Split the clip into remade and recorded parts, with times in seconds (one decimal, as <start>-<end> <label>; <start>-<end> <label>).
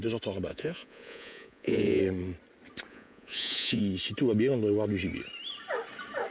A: 0.0-0.5 recorded; 0.5-2.0 remade; 2.0-2.9 recorded; 2.9-3.8 remade; 3.8-6.3 recorded